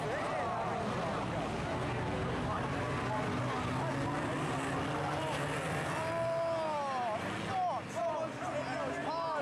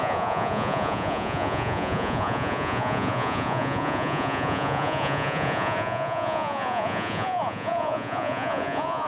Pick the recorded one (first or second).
first